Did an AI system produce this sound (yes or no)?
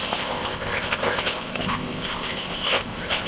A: yes